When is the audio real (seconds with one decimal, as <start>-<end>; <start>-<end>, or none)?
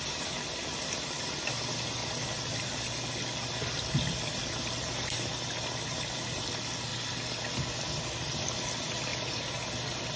0.0-10.2